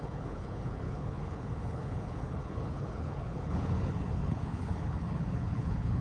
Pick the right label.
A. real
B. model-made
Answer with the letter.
B